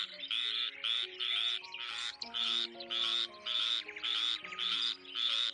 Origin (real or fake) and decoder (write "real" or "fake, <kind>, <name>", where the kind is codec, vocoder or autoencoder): real